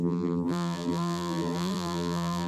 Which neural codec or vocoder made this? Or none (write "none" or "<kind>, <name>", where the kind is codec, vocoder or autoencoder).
vocoder, BigVGAN v2